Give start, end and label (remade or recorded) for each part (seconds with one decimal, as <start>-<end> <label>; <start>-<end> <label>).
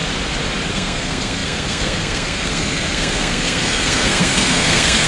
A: 0.0-0.7 recorded; 0.7-5.1 remade